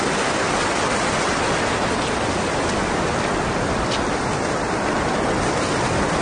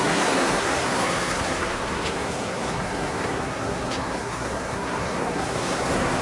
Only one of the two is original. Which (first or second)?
first